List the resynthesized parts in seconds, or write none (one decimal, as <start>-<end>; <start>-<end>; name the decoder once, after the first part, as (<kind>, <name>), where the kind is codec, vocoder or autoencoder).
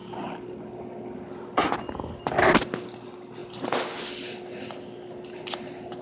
none